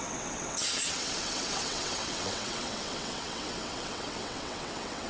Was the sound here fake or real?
fake